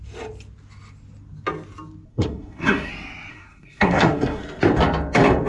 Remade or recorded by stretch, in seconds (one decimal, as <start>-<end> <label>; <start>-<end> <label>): 0.0-2.1 recorded; 2.1-2.9 remade; 2.9-3.3 recorded; 3.3-4.4 remade; 4.4-5.5 recorded